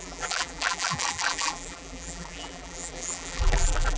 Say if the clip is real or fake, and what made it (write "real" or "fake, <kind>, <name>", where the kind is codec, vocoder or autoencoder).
fake, vocoder, BigVGAN v2